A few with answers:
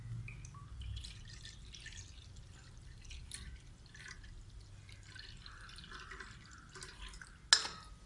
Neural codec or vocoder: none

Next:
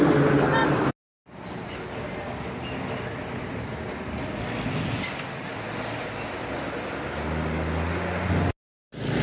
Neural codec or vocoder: none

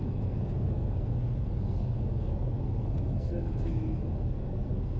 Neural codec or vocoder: codec, SNAC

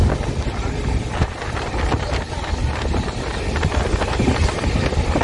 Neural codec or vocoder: none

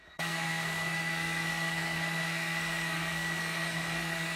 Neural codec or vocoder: codec, SNAC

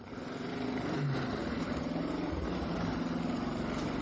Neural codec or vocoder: vocoder, BigVGAN v2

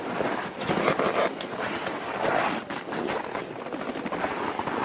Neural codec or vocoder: none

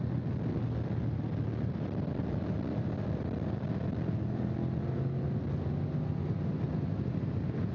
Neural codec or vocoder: none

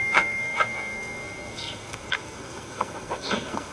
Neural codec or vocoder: codec, SNAC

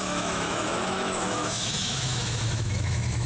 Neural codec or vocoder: autoencoder, DAC-VAE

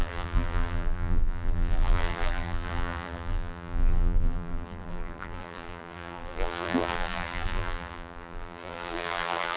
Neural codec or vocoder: vocoder, BigVGAN v2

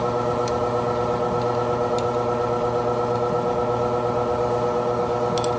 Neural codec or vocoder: none